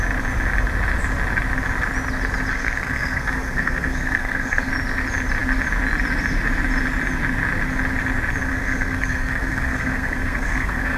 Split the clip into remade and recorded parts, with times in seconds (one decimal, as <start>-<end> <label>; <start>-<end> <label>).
0.0-2.5 recorded; 2.5-4.7 remade; 4.7-8.5 recorded; 8.5-11.0 remade